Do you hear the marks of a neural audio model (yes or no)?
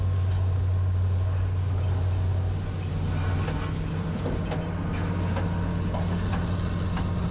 no